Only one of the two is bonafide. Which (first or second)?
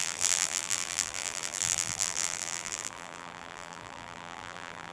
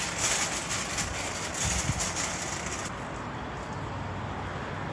second